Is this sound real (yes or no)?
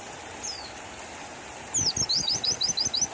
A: yes